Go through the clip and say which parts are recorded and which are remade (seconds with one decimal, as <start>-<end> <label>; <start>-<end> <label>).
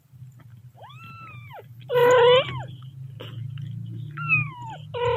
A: 0.0-5.2 recorded